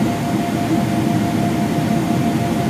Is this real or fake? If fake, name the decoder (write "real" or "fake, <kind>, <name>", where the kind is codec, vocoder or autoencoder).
real